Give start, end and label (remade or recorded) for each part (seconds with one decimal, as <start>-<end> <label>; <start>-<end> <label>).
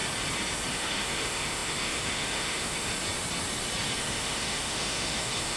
0.0-0.7 recorded; 0.7-2.9 remade; 2.9-4.0 recorded; 4.0-5.6 remade